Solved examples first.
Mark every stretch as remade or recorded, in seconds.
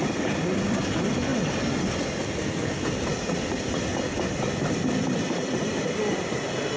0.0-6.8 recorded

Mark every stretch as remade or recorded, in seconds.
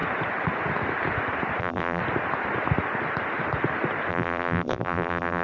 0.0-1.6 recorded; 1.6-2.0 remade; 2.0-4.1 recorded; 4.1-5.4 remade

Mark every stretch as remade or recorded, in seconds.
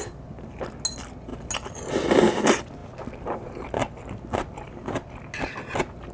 0.0-6.1 recorded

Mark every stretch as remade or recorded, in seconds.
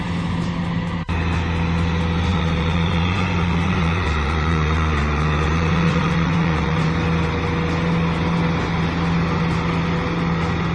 0.0-2.3 recorded; 2.3-6.9 remade; 6.9-10.7 recorded